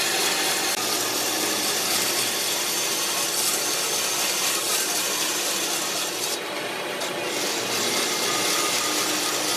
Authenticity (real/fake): real